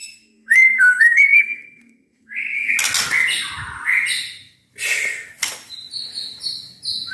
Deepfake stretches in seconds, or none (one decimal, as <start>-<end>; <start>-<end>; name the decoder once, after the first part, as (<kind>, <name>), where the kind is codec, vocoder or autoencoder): 0.0-2.7 (codec, SNAC)